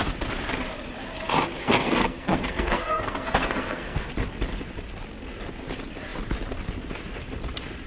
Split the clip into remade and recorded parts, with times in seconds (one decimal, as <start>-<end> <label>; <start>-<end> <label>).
0.0-1.6 recorded; 1.6-4.1 remade; 4.1-7.9 recorded